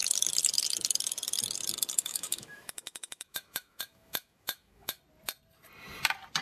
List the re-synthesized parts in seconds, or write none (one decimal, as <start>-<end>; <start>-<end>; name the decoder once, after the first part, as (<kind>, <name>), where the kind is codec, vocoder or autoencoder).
2.0-5.0 (autoencoder, DAC-VAE)